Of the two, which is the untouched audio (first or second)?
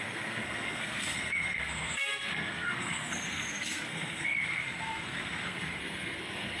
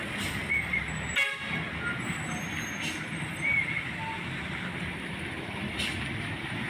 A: second